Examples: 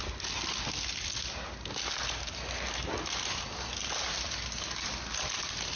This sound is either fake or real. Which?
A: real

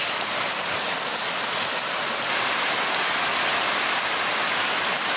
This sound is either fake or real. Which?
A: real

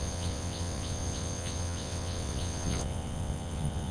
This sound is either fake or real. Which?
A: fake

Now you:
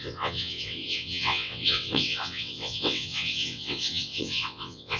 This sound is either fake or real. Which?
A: fake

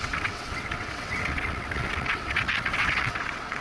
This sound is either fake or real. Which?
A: fake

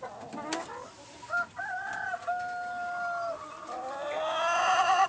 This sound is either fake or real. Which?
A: real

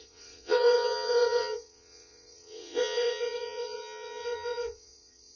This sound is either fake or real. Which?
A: fake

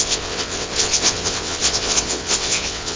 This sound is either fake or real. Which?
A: fake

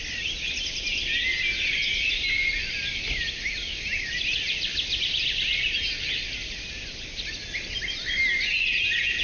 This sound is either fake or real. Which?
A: real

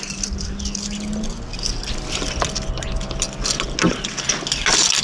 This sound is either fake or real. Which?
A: real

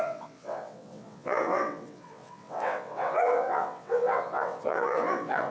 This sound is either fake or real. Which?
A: fake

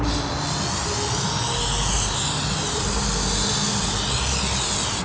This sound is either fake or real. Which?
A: real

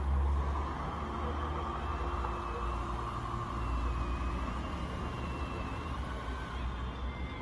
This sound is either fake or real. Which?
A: real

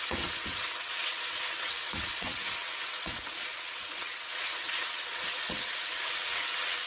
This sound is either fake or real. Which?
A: fake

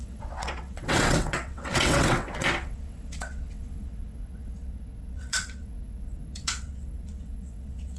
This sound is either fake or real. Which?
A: fake